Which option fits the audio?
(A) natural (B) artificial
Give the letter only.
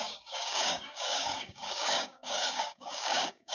B